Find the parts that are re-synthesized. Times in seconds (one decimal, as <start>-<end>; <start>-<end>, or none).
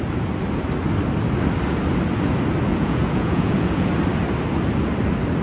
2.7-3.9